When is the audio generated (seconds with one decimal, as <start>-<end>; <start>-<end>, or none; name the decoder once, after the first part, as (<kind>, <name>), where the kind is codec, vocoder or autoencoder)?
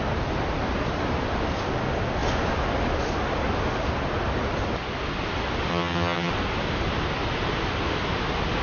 5.7-6.3 (vocoder, HiFi-GAN)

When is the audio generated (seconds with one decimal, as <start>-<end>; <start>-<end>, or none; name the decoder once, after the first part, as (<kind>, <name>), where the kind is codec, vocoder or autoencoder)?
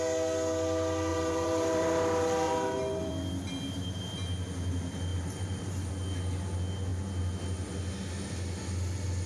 1.1-3.1 (vocoder, BigVGAN v2); 5.1-5.9